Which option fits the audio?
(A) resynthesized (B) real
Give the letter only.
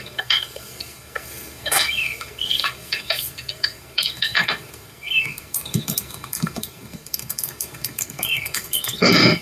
A